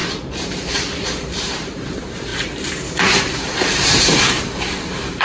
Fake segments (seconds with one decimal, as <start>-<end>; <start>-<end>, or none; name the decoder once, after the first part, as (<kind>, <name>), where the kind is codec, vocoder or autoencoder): 0.0-5.2 (vocoder, BigVGAN v2)